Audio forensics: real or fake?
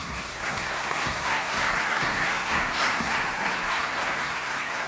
fake